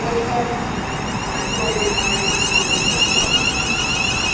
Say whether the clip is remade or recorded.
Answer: recorded